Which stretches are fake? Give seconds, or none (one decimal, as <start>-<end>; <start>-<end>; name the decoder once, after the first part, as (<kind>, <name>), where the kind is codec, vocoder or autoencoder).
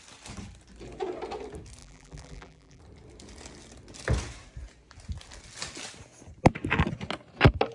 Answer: 1.8-2.8 (vocoder, BigVGAN v2)